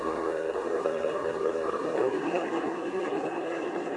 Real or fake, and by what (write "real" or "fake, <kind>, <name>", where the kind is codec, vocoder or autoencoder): fake, codec, SNAC